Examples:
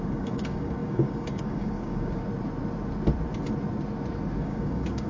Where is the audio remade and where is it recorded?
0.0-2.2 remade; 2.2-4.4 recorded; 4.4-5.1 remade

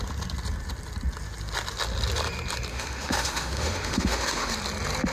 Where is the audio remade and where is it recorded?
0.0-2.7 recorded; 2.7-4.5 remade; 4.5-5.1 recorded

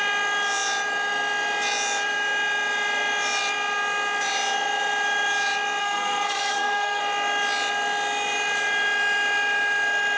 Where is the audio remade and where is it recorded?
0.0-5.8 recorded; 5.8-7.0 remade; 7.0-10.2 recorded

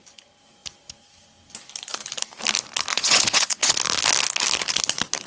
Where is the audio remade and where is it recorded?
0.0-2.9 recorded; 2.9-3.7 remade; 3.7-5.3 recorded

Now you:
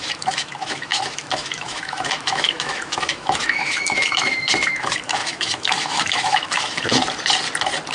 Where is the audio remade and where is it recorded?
0.0-7.0 remade; 7.0-7.9 recorded

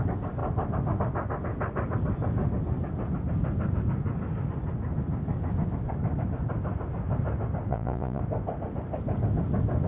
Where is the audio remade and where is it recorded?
0.0-7.7 recorded; 7.7-8.2 remade; 8.2-9.9 recorded

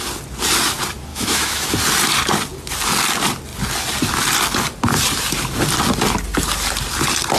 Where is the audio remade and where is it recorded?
0.0-1.1 recorded; 1.1-1.7 remade; 1.7-7.4 recorded